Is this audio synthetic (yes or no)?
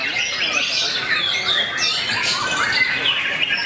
no